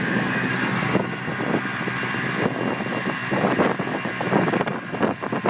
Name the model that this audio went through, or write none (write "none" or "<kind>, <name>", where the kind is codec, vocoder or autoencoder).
none